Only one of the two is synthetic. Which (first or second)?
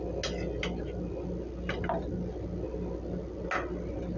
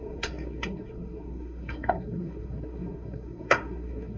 second